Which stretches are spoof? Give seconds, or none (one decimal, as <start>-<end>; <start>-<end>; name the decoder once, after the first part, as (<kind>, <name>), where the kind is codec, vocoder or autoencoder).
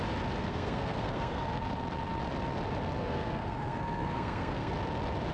0.4-1.6 (codec, SNAC); 3.0-4.7